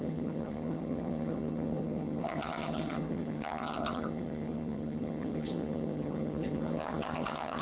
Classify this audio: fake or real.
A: fake